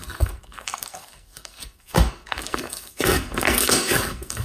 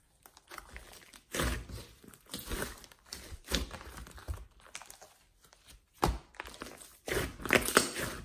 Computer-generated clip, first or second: first